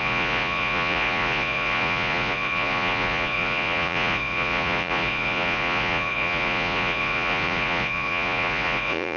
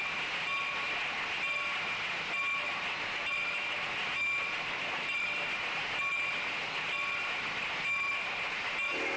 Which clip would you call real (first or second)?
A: second